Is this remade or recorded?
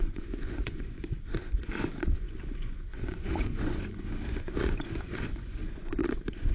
remade